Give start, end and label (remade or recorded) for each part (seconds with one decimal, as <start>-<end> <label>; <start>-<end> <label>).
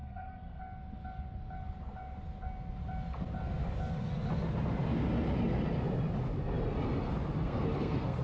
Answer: 0.0-0.6 remade; 0.6-7.4 recorded; 7.4-8.2 remade